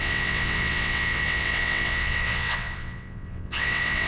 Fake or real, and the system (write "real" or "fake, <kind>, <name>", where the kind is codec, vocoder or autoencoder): fake, vocoder, WaveNeXt